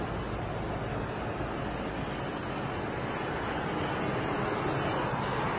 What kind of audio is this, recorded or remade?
recorded